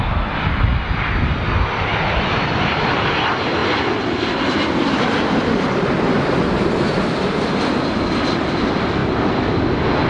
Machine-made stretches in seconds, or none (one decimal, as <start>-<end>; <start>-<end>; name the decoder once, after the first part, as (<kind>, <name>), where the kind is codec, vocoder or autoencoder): none